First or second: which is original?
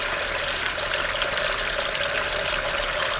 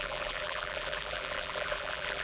first